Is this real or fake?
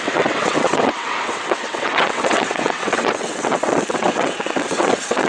fake